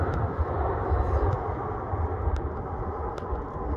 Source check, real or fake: real